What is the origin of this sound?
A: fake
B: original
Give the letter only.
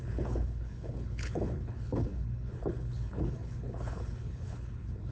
A